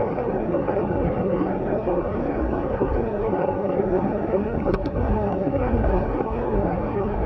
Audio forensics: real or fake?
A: fake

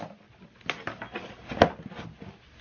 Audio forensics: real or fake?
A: real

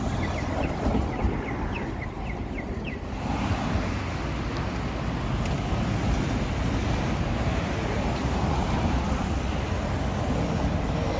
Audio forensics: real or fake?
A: real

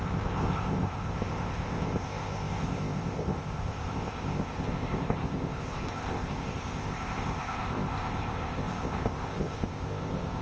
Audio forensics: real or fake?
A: fake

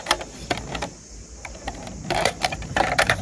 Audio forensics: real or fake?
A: fake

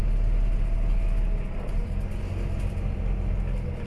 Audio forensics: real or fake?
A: real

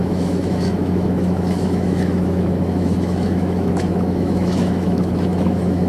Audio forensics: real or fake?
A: fake